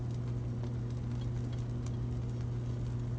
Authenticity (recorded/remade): recorded